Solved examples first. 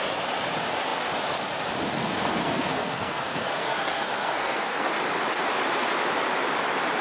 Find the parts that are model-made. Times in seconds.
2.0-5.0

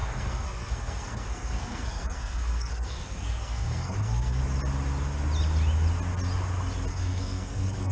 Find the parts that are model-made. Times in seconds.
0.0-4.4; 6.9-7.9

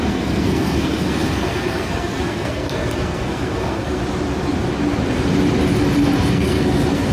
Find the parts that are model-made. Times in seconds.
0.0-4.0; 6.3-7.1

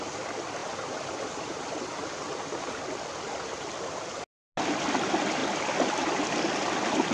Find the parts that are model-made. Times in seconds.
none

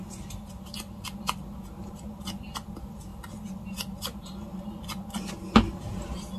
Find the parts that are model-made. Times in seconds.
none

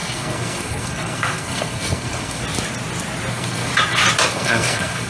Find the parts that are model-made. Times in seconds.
0.0-2.4; 3.3-3.7; 4.3-5.1

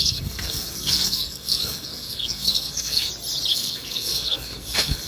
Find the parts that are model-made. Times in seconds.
0.0-3.1; 3.5-5.1

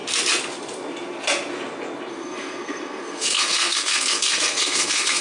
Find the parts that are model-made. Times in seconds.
2.1-5.2